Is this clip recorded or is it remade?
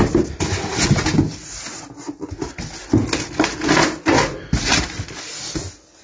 recorded